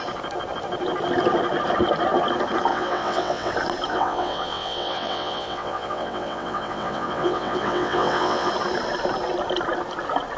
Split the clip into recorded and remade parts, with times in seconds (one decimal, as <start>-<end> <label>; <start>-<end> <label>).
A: 0.0-2.7 recorded; 2.7-3.5 remade; 3.5-3.9 recorded; 3.9-8.5 remade; 8.5-10.4 recorded